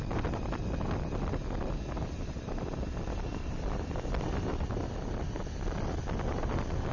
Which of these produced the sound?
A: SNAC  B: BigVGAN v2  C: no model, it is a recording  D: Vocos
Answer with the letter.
C